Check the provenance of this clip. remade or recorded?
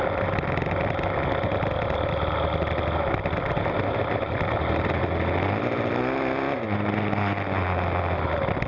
recorded